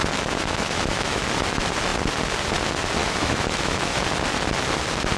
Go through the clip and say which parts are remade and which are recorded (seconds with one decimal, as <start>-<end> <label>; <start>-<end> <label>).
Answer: 0.0-1.2 remade; 1.2-3.0 recorded; 3.0-4.0 remade; 4.0-5.2 recorded